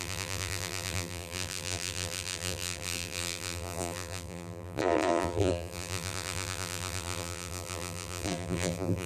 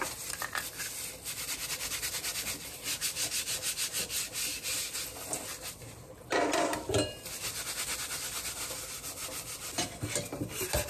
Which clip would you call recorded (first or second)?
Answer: second